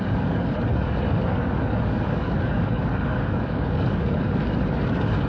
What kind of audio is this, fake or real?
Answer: fake